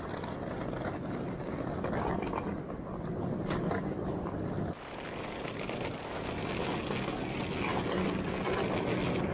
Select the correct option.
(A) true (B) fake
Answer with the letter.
A